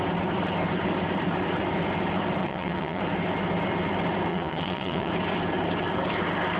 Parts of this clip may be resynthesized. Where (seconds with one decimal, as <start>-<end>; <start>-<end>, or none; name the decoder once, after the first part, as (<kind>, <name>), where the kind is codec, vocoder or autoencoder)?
2.4-3.0 (vocoder, WaveNeXt); 4.3-5.1